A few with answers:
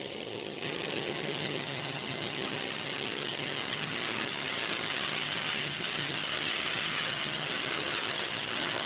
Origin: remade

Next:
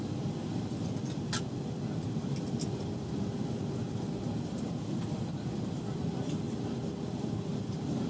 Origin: remade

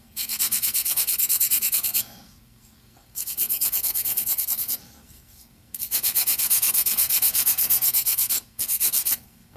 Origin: remade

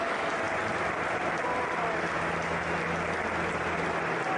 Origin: recorded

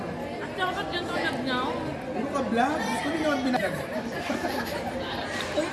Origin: recorded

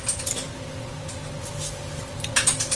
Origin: recorded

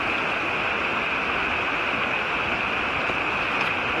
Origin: recorded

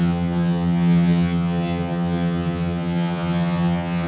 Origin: remade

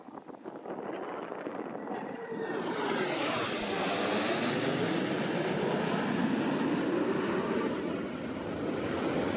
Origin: recorded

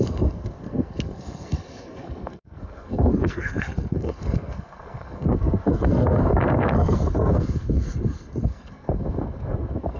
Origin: remade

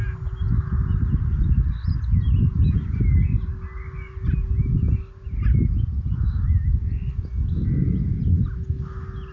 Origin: recorded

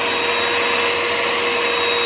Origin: recorded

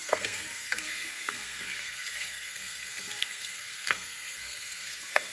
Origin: remade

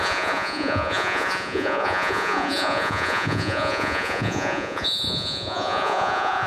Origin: remade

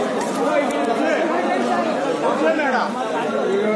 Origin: recorded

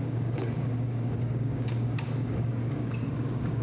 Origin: remade